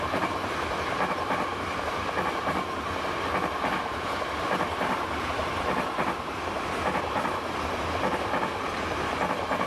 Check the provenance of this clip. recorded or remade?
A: recorded